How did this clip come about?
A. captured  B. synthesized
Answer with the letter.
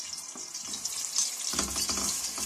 A